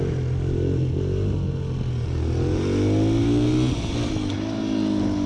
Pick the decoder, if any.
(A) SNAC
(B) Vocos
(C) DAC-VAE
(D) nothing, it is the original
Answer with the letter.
D